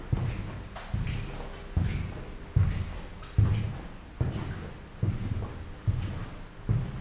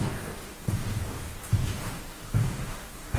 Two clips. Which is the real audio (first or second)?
first